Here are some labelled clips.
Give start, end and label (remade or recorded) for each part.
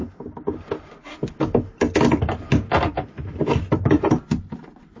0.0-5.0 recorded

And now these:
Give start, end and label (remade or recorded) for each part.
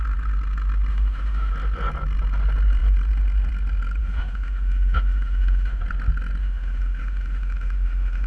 0.0-0.9 recorded; 0.9-1.5 remade; 1.5-4.0 recorded; 4.0-5.8 remade; 5.8-6.4 recorded; 6.4-8.3 remade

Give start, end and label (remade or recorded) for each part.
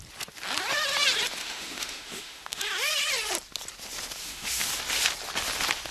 0.0-1.4 recorded; 1.4-2.6 remade; 2.6-4.2 recorded; 4.2-4.7 remade; 4.7-5.9 recorded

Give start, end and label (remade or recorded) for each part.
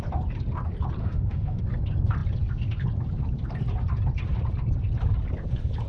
0.0-1.0 recorded; 1.0-1.6 remade; 1.6-5.9 recorded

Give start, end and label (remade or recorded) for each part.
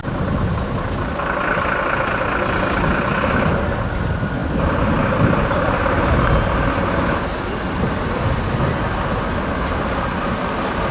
0.0-10.9 recorded